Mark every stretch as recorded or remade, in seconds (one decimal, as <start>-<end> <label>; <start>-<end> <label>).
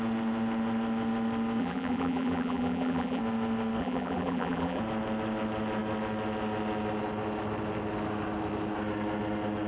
0.0-1.6 recorded; 1.6-3.2 remade; 3.2-3.8 recorded; 3.8-4.8 remade; 4.8-9.7 recorded